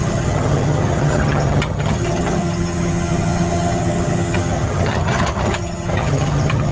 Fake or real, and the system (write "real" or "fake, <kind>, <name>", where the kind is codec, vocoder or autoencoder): fake, vocoder, HiFi-GAN